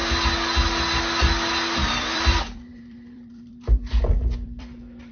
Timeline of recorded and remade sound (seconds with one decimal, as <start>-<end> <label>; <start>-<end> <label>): 0.0-1.8 recorded; 1.8-5.1 remade